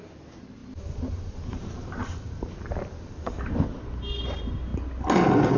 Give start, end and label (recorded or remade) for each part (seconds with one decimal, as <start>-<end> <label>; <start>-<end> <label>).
0.0-0.6 remade; 0.6-1.5 recorded; 1.5-3.7 remade; 3.7-4.2 recorded; 4.2-4.7 remade; 4.7-5.6 recorded